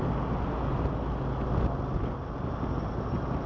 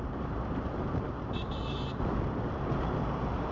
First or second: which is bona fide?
first